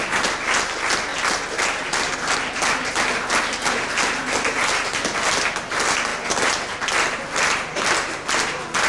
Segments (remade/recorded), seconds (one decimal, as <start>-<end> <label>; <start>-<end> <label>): 0.0-8.9 recorded